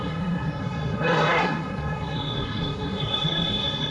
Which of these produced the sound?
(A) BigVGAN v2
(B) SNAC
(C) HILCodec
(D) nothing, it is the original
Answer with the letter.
B